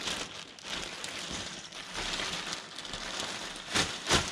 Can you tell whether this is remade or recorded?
recorded